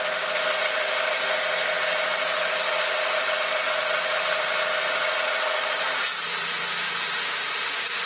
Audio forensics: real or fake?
real